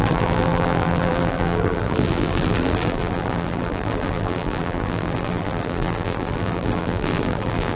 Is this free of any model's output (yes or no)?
no